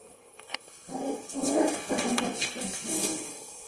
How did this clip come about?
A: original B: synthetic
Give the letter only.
B